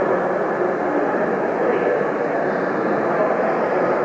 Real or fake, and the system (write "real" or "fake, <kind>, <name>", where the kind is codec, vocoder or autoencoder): real